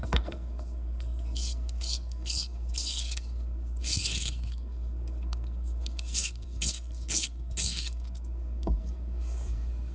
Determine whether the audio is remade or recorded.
remade